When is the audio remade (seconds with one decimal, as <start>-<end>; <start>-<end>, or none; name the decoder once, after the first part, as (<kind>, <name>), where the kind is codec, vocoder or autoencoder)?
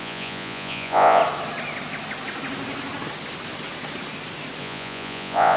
0.0-1.2 (vocoder, Vocos); 4.6-5.6